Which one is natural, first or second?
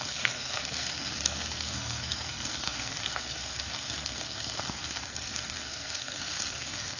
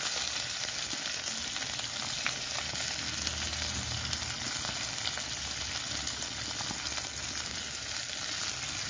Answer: second